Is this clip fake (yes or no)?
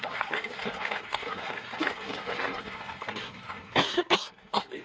yes